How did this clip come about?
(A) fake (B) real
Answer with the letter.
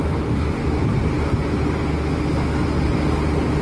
B